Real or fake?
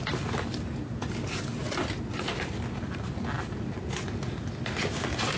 real